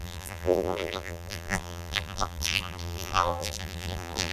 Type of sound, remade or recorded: remade